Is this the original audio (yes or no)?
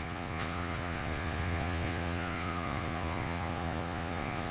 no